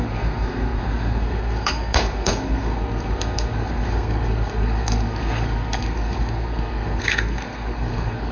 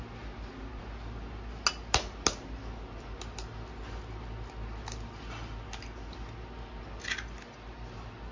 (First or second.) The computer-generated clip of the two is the first